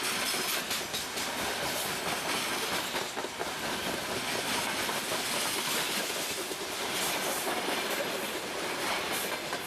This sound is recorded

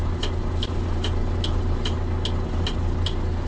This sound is recorded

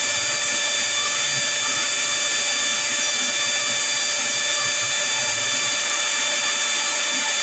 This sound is recorded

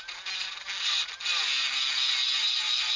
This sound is recorded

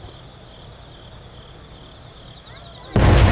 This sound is recorded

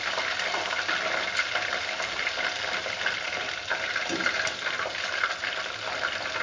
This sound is recorded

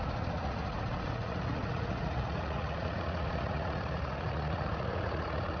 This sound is remade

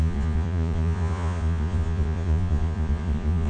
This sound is remade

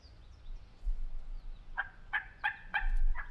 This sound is remade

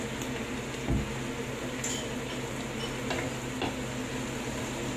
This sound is recorded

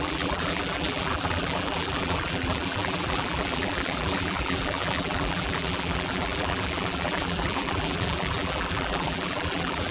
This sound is remade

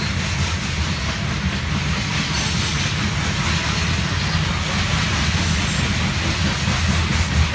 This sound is recorded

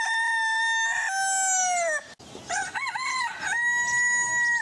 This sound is recorded